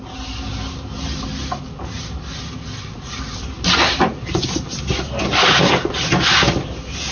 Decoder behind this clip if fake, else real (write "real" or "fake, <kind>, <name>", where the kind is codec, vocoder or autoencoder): real